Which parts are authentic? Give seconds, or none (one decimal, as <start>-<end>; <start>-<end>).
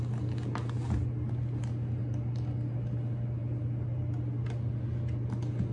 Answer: 0.0-5.7